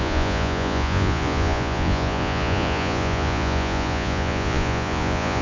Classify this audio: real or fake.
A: fake